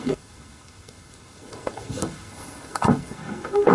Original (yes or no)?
no